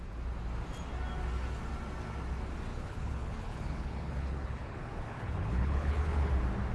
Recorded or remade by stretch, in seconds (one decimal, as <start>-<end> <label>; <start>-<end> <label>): 0.0-2.7 recorded; 2.7-6.3 remade; 6.3-6.7 recorded